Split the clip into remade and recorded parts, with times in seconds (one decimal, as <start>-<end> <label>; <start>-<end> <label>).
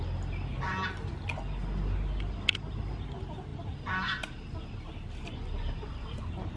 0.0-6.6 recorded